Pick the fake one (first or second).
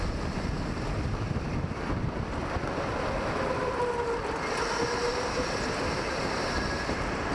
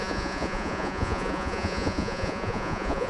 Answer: second